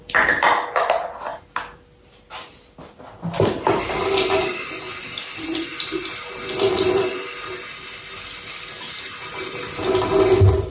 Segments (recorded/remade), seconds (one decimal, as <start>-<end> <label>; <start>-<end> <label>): 0.0-10.7 recorded